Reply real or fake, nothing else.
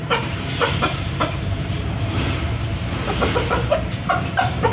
fake